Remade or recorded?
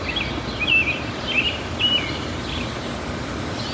recorded